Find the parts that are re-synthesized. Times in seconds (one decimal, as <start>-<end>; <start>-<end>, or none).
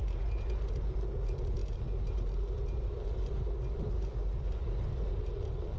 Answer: none